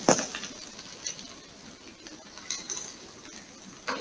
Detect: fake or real real